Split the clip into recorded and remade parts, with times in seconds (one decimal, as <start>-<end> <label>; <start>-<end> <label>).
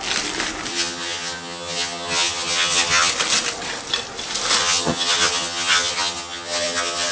0.0-0.7 recorded; 0.7-3.1 remade; 3.1-4.6 recorded; 4.6-7.1 remade